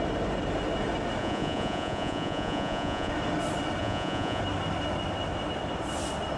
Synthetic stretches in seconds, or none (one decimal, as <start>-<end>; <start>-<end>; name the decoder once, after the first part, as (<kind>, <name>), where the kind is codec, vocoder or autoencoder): 1.2-3.1 (vocoder, Vocos); 3.8-4.4